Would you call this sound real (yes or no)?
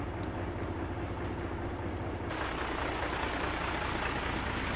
yes